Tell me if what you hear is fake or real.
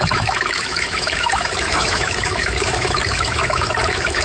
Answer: fake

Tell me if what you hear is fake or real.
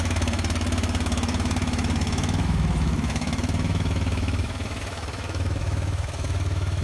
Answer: fake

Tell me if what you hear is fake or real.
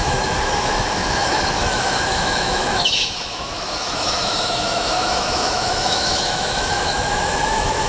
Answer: fake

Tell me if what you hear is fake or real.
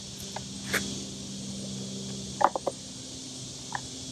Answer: real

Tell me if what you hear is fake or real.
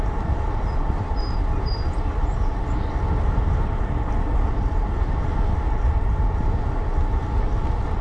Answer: real